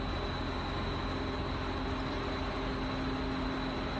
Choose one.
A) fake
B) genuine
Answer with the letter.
B